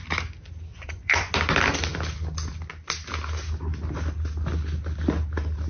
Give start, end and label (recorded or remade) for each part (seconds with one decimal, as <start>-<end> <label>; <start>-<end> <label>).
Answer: 0.0-0.7 recorded; 0.7-1.3 remade; 1.3-5.7 recorded